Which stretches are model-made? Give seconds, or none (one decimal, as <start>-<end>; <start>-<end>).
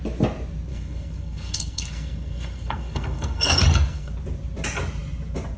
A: 0.7-4.1